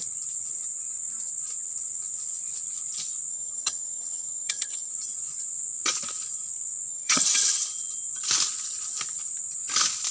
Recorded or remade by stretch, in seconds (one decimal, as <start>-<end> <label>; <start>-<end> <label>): 0.0-3.3 recorded; 3.3-4.9 remade; 4.9-6.9 recorded; 6.9-7.7 remade; 7.7-10.1 recorded